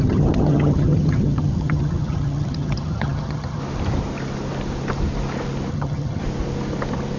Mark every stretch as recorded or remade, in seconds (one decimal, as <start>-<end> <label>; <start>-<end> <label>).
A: 0.0-3.6 remade; 3.6-5.7 recorded; 5.7-6.2 remade; 6.2-7.2 recorded